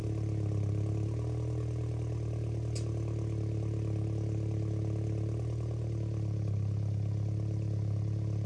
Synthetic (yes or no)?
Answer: no